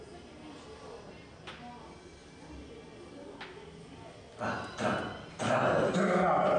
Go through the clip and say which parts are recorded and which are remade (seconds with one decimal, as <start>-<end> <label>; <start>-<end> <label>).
0.0-6.6 recorded